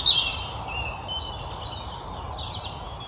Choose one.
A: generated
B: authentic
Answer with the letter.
B